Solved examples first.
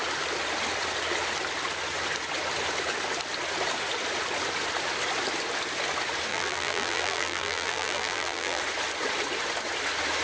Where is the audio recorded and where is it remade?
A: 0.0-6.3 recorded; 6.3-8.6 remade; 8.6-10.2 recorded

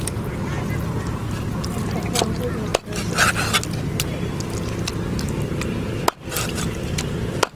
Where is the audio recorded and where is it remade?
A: 0.0-7.6 recorded

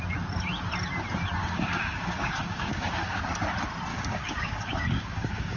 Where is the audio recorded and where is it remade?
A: 0.0-1.4 recorded; 1.4-3.2 remade; 3.2-3.9 recorded; 3.9-5.6 remade

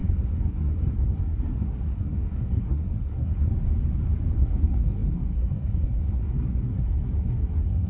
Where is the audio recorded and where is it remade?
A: 0.0-3.5 remade; 3.5-4.4 recorded; 4.4-7.9 remade

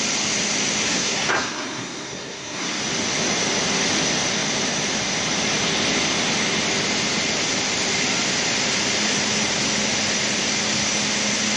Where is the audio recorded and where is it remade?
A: 0.0-0.9 recorded; 0.9-2.8 remade; 2.8-11.6 recorded

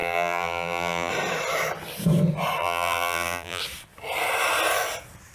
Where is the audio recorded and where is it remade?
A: 0.0-1.1 remade; 1.1-2.6 recorded; 2.6-3.6 remade; 3.6-5.3 recorded

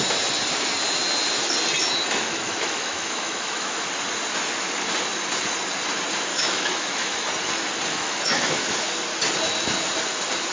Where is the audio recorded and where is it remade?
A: 0.0-2.2 recorded; 2.2-3.8 remade; 3.8-6.3 recorded; 6.3-7.3 remade; 7.3-7.9 recorded; 7.9-8.9 remade; 8.9-10.5 recorded